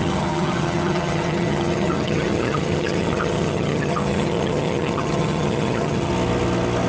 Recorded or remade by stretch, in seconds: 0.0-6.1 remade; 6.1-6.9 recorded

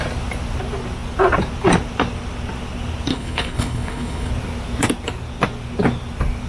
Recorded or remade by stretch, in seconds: 0.0-3.1 recorded; 3.1-4.3 remade; 4.3-6.5 recorded

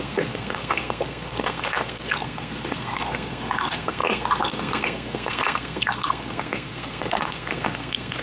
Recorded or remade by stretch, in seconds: 0.0-8.2 remade

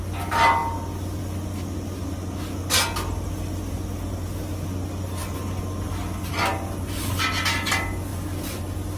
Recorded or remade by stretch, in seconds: 0.0-9.0 recorded

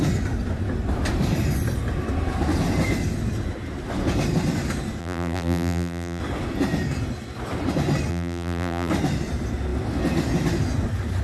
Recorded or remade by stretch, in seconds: 0.0-5.0 recorded; 5.0-6.2 remade; 6.2-8.1 recorded; 8.1-8.9 remade; 8.9-11.2 recorded

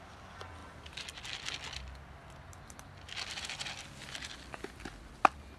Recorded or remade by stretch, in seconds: 0.0-5.6 recorded

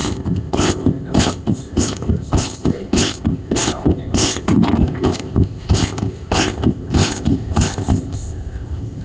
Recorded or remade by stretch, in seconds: 0.0-9.0 remade